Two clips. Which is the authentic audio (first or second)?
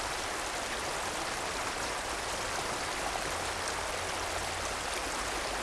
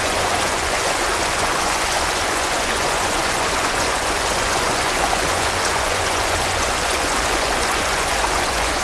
first